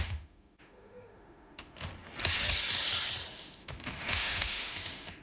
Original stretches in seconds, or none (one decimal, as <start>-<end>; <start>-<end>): 1.9-3.3

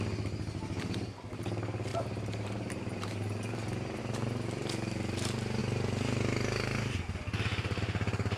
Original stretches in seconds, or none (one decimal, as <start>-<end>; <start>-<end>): 0.0-1.9; 4.0-8.4

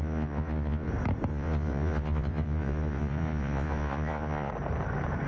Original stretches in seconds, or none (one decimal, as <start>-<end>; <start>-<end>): 0.9-1.3; 4.5-5.3

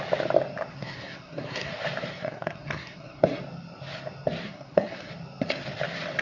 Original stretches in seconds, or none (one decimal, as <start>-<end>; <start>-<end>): 0.0-0.7; 1.7-2.1; 3.4-4.4; 5.1-6.2